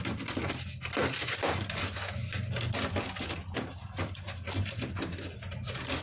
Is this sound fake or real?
real